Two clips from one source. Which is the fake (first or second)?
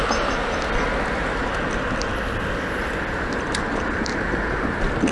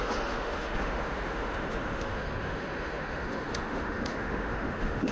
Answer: second